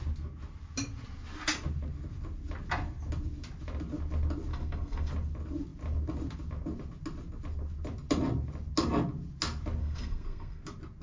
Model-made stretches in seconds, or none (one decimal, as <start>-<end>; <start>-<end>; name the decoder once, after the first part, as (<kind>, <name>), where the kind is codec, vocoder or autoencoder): 4.5-5.1 (codec, SNAC); 9.8-10.6